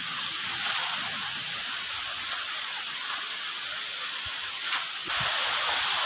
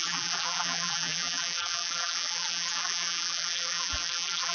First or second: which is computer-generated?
second